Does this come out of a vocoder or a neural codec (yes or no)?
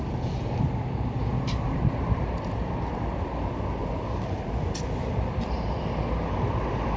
no